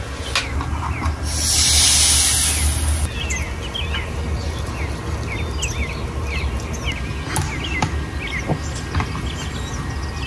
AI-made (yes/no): no